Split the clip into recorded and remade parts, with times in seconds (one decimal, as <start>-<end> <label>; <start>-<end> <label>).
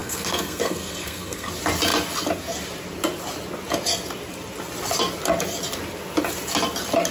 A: 0.0-1.5 remade; 1.5-7.1 recorded